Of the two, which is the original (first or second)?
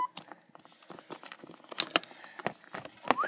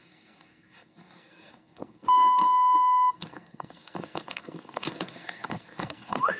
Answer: first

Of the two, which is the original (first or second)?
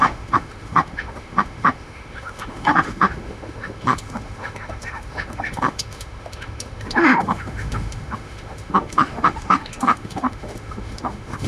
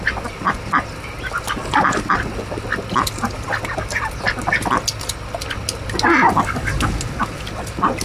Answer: second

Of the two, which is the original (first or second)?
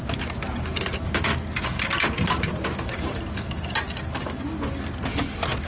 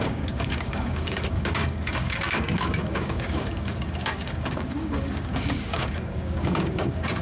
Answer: first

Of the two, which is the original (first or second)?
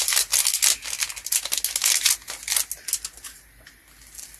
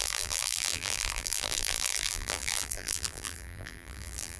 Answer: first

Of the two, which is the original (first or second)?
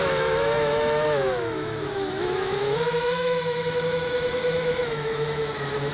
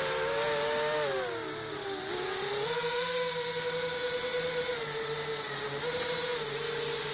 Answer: second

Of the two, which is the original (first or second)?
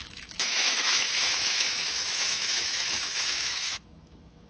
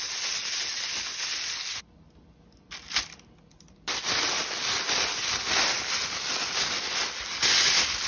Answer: second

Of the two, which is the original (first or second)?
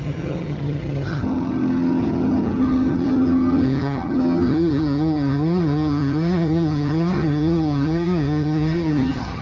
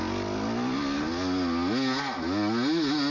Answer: second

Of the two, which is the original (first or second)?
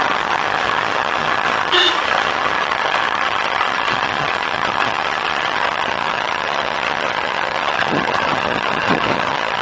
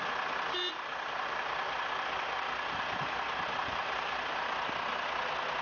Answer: second